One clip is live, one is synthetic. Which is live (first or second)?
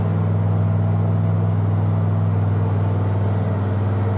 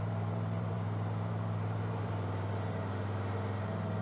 first